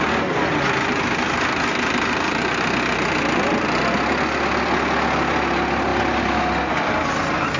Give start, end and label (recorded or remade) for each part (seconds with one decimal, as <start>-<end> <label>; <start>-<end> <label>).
0.0-7.6 recorded